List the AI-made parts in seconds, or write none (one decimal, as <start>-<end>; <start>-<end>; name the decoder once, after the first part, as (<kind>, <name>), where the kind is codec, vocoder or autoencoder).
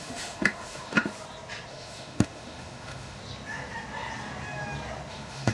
0.0-1.1 (autoencoder, DAC-VAE); 1.7-3.2; 5.1-5.5